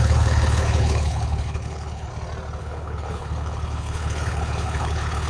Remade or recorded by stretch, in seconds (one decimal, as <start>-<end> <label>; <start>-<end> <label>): 0.0-2.1 remade; 2.1-2.6 recorded; 2.6-5.3 remade